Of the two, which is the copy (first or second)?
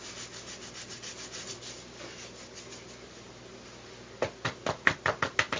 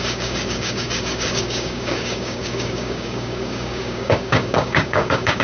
second